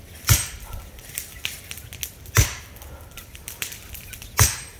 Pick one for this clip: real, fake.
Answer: real